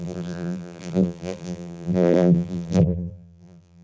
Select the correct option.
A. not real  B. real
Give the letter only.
A